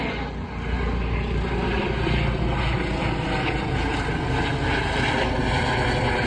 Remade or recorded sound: recorded